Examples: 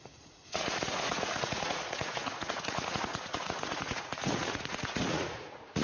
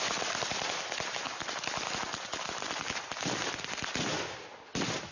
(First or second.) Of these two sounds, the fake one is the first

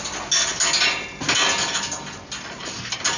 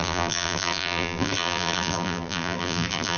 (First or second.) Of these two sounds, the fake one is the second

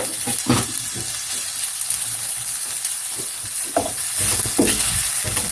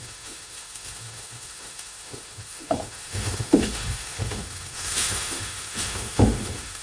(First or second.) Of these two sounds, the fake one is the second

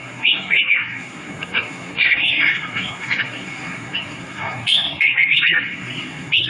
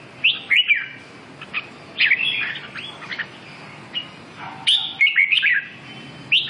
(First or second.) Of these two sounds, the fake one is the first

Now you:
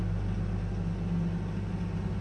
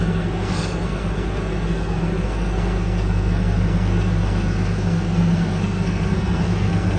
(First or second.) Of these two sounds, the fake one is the second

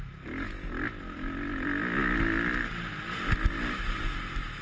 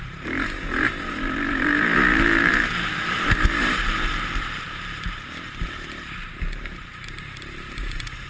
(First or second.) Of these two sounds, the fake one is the second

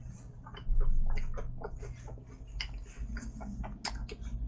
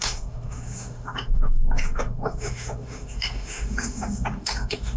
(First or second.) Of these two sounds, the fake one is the second